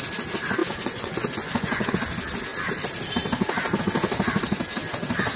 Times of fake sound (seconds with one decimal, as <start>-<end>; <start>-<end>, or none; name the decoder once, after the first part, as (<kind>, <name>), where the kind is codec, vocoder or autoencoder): 0.6-1.9 (vocoder, Vocos)

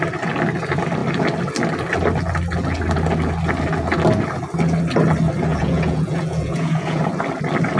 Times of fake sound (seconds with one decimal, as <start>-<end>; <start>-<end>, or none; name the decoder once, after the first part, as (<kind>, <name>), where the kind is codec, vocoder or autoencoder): 5.5-7.0 (vocoder, Vocos)

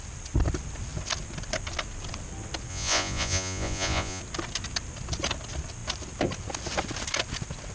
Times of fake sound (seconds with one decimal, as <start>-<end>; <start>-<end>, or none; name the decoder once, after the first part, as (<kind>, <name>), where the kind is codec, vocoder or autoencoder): 2.7-4.2 (vocoder, Vocos)

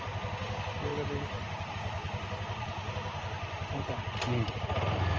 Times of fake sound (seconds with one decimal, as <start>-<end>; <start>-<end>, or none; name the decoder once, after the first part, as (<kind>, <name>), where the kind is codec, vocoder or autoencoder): none

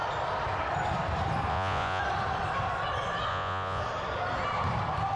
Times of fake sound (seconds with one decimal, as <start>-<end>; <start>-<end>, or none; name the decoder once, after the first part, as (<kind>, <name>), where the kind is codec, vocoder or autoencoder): 1.5-2.0 (vocoder, Vocos); 3.3-3.8